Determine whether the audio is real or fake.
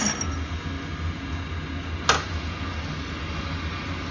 real